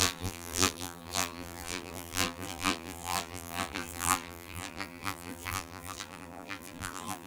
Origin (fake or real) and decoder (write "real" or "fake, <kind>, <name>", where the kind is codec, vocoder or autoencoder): fake, vocoder, BigVGAN v2